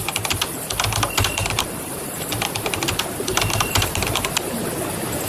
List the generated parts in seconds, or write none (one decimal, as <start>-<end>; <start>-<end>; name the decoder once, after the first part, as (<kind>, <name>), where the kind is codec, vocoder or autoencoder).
1.4-4.6 (vocoder, BigVGAN v2)